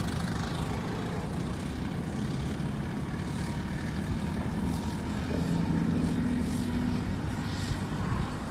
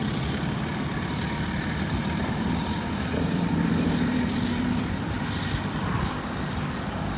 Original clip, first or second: first